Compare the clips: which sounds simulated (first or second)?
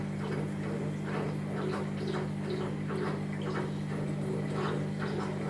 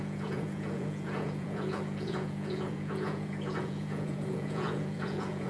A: second